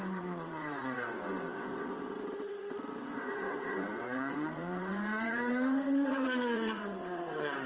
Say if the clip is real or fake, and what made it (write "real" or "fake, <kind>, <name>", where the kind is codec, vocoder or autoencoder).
fake, vocoder, WaveNeXt